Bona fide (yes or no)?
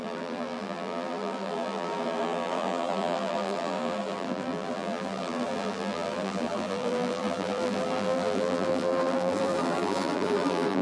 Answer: no